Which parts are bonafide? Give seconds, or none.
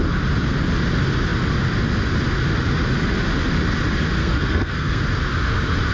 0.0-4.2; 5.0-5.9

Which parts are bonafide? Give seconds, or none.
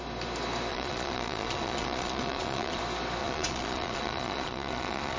0.0-0.7; 2.8-3.2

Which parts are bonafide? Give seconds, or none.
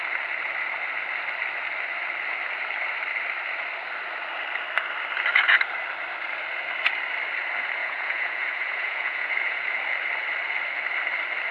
0.0-7.8; 9.8-11.5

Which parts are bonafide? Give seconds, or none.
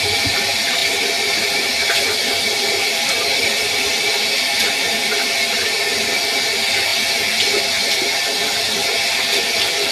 0.0-0.8; 3.9-9.9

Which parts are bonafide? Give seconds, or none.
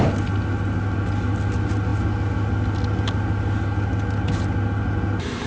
0.0-5.5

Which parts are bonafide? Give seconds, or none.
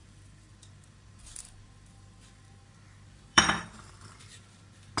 2.6-3.3; 3.9-5.0